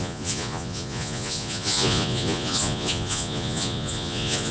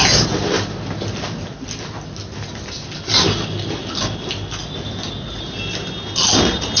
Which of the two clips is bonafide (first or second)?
second